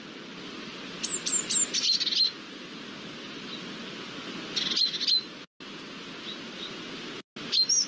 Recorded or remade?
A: recorded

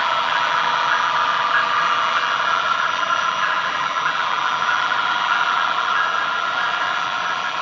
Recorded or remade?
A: remade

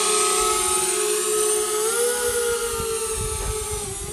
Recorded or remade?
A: recorded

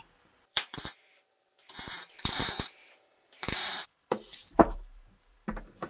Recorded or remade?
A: remade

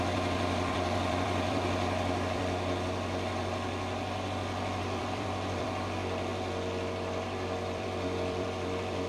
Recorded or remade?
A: remade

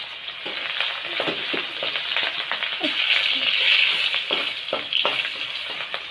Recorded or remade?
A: recorded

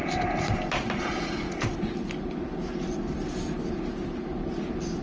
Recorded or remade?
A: recorded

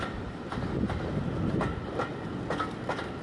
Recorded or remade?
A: recorded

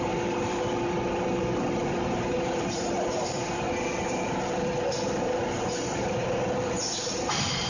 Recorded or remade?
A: remade